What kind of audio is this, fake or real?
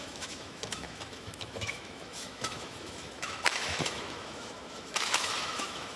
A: fake